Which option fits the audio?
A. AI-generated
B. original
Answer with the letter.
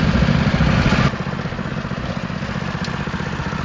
B